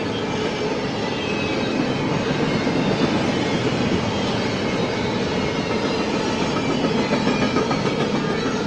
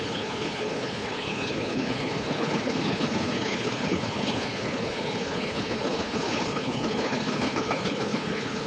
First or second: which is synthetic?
second